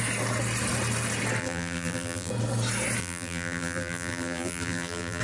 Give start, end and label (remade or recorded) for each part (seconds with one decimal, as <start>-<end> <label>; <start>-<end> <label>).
0.0-1.4 recorded; 1.4-2.3 remade; 2.3-3.0 recorded; 3.0-5.2 remade